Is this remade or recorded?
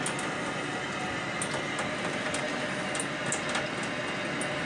recorded